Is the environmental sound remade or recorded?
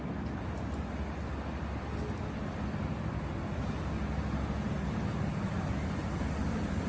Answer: recorded